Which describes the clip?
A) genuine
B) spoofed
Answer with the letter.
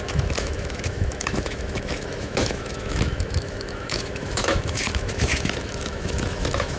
B